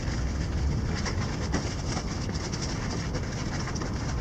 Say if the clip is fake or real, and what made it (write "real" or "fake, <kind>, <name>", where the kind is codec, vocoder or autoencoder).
real